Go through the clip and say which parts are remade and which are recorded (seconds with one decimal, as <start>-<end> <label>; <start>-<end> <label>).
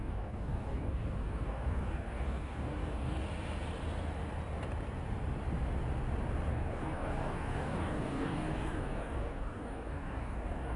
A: 0.0-3.2 remade; 3.2-6.5 recorded; 6.5-10.8 remade